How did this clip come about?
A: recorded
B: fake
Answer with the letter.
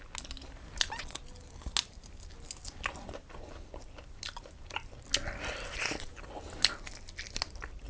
A